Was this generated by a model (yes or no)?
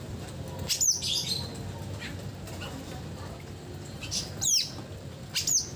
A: no